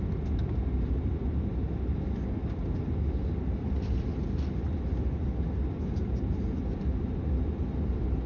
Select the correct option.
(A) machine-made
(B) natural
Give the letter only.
B